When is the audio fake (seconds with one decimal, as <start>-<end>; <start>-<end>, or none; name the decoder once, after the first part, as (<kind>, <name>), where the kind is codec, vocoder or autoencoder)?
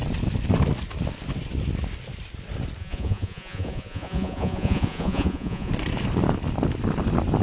2.8-5.7 (vocoder, Vocos)